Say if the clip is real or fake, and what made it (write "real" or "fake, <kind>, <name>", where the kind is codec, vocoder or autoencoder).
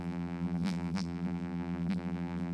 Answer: fake, vocoder, BigVGAN v2